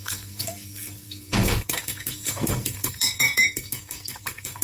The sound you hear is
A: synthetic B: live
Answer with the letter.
A